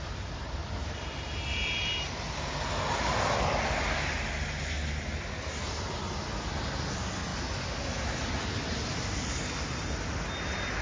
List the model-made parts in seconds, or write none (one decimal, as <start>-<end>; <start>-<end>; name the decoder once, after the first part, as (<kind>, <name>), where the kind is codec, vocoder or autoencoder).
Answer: 0.6-2.7 (vocoder, BigVGAN v2)